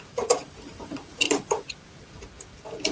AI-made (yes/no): yes